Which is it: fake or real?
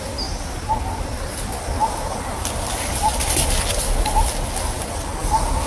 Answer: real